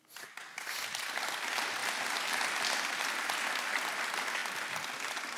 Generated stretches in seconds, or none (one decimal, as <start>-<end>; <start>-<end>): none